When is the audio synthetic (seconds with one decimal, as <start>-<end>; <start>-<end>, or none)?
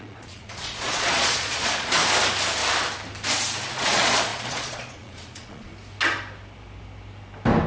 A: 0.0-2.0; 3.7-5.7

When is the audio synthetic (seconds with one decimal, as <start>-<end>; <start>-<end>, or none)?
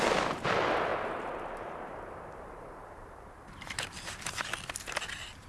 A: 0.9-4.2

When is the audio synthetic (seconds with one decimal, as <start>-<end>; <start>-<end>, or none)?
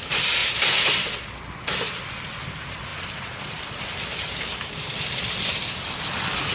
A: none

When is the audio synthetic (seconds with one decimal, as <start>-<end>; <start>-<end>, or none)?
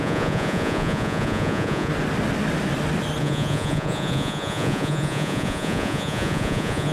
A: 0.0-1.9; 3.2-6.9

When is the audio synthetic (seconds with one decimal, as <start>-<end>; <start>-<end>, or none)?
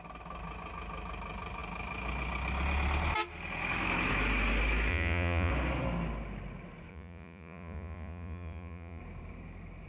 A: 4.9-5.5; 6.9-9.0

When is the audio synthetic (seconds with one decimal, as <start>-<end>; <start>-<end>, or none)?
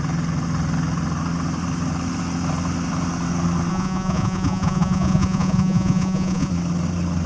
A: 3.7-6.5